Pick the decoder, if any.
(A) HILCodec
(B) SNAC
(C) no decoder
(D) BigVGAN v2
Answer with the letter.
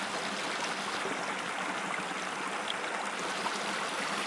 C